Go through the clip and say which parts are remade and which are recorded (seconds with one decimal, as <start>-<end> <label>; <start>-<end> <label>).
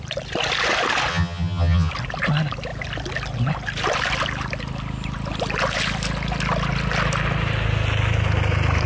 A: 0.0-1.1 recorded; 1.1-1.9 remade; 1.9-8.9 recorded